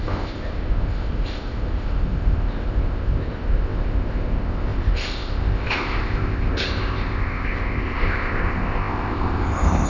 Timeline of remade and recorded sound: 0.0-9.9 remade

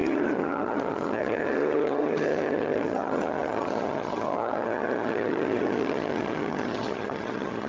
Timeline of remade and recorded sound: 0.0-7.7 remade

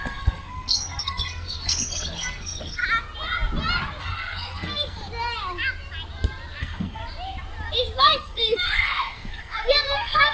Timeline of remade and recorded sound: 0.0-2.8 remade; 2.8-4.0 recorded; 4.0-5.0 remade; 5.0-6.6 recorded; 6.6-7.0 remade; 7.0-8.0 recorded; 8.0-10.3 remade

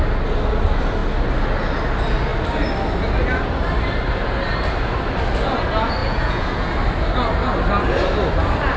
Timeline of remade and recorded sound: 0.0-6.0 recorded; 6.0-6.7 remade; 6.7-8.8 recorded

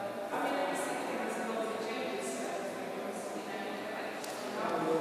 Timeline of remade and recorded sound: 0.0-5.0 recorded

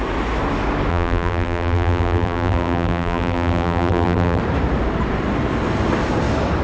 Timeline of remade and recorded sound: 0.0-0.9 recorded; 0.9-4.4 remade; 4.4-6.6 recorded